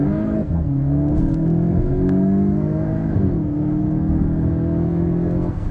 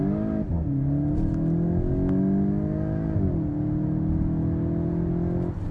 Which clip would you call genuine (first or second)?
second